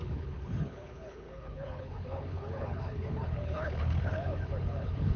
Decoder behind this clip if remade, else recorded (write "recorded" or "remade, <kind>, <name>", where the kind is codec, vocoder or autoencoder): remade, codec, HILCodec